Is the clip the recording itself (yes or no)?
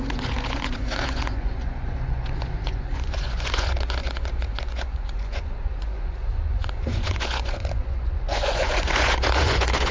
no